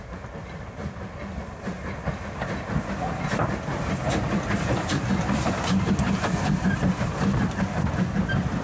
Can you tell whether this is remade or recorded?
recorded